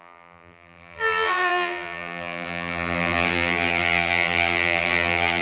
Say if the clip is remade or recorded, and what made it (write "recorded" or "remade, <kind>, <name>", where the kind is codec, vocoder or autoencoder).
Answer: remade, vocoder, BigVGAN v2